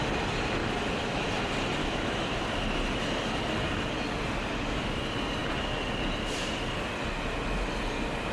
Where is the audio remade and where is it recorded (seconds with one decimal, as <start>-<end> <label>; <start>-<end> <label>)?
0.0-0.6 recorded; 0.6-1.3 remade; 1.3-1.8 recorded; 1.8-2.4 remade; 2.4-8.3 recorded